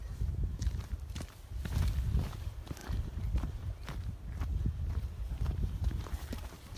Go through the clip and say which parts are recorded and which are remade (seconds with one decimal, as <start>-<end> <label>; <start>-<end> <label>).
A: 0.0-0.9 remade; 0.9-2.8 recorded; 2.8-6.8 remade